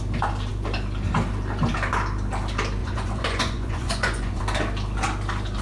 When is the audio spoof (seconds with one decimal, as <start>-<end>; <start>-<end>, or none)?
2.8-4.4